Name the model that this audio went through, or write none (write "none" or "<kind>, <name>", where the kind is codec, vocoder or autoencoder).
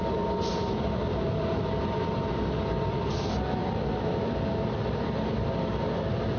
none